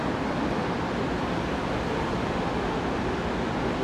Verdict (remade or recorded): recorded